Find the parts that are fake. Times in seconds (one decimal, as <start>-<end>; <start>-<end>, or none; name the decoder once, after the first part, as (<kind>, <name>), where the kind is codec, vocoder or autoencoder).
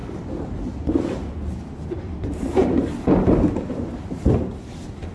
none